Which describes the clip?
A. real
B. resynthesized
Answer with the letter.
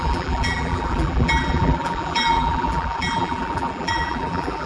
B